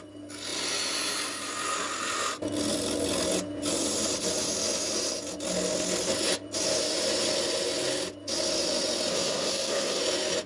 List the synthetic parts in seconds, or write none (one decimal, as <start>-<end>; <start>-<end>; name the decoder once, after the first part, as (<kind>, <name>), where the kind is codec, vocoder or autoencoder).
9.1-10.0 (codec, SNAC)